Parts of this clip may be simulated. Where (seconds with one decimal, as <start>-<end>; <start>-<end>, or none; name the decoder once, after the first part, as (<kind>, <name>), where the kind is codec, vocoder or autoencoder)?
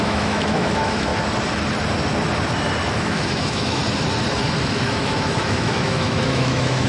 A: 0.0-1.1 (autoencoder, DAC-VAE); 2.9-3.8; 4.7-6.9